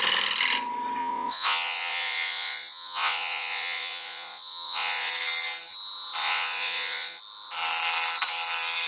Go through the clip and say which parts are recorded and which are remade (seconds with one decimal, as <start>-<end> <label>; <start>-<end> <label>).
0.0-1.0 recorded; 1.0-5.1 remade; 5.1-6.2 recorded; 6.2-7.2 remade; 7.2-8.9 recorded